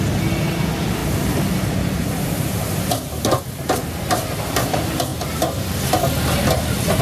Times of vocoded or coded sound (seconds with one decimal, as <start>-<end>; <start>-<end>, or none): none